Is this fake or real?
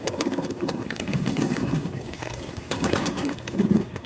fake